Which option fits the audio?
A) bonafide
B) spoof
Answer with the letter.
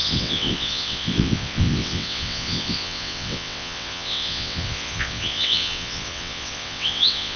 B